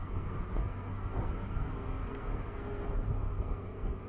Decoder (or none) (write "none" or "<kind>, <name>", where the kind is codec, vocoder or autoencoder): codec, SNAC